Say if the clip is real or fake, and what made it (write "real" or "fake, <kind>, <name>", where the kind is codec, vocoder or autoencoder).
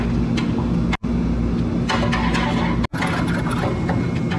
real